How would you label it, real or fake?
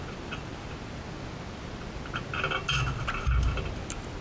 real